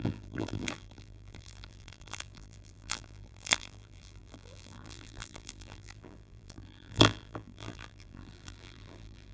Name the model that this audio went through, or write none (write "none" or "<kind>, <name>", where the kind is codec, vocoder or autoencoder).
vocoder, BigVGAN v2